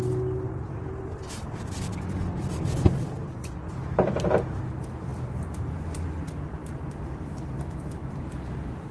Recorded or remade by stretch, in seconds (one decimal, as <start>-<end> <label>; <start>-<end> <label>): 0.0-6.6 recorded; 6.6-8.2 remade; 8.2-8.9 recorded